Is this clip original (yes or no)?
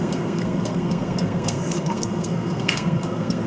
no